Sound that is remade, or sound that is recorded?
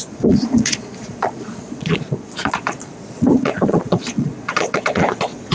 remade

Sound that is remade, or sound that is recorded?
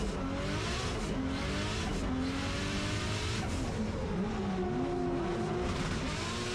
recorded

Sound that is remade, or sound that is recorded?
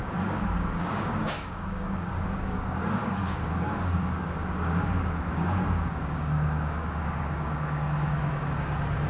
remade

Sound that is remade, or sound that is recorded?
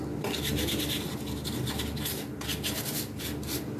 recorded